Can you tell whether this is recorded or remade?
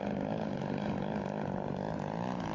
recorded